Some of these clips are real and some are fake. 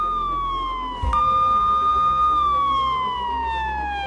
real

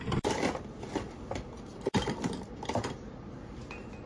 fake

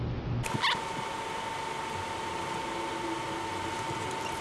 real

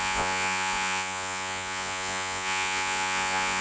fake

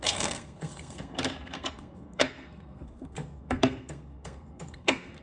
fake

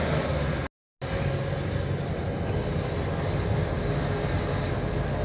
real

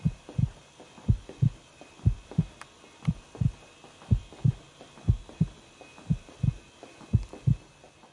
real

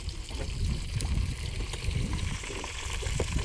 fake